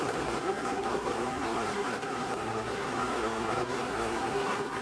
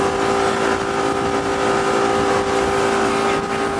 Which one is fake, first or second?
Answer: first